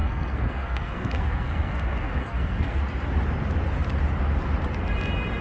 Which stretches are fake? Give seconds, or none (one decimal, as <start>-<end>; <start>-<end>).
0.0-2.8

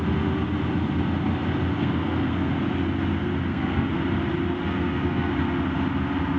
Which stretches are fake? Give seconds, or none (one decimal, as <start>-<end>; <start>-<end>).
1.8-2.5; 3.5-4.0; 4.6-5.3

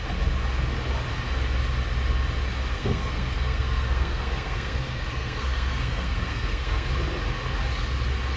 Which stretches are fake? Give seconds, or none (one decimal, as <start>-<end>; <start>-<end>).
2.7-6.9

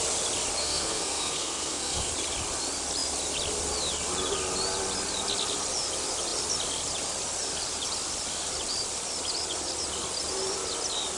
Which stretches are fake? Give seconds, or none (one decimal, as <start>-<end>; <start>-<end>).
0.6-2.1

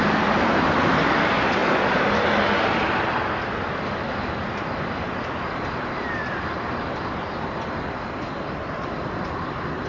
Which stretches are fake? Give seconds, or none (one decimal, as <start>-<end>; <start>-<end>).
none